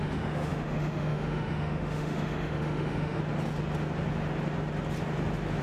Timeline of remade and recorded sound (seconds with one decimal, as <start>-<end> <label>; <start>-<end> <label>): 0.0-3.2 remade; 3.2-5.6 recorded